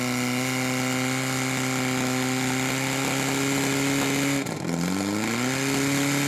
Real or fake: real